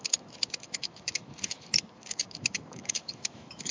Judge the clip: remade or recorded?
remade